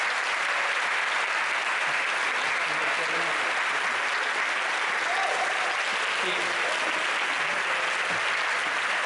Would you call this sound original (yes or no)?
yes